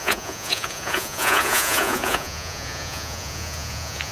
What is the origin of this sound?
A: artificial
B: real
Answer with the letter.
A